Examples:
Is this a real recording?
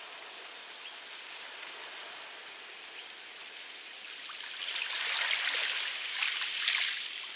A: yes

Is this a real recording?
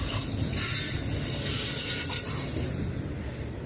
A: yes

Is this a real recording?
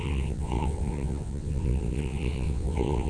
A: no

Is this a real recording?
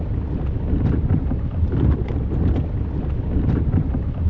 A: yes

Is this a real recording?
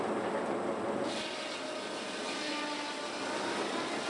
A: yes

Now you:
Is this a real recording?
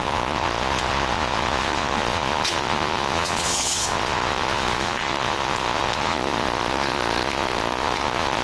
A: no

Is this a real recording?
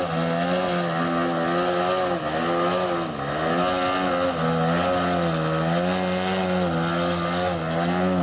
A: yes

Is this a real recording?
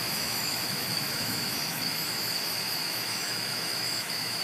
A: no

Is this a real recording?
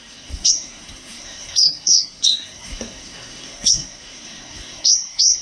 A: no